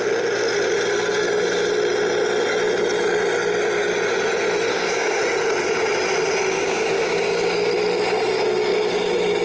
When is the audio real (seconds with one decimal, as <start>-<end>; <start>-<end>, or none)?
0.0-4.7; 5.2-6.6; 7.7-9.4